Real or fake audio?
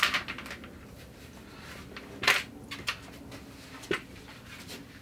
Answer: real